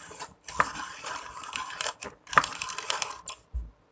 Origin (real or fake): real